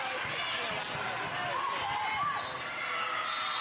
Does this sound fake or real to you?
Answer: real